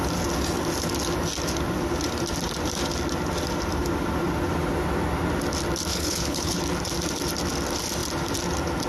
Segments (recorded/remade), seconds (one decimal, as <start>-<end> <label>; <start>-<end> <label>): 0.0-5.9 recorded; 5.9-6.6 remade; 6.6-8.9 recorded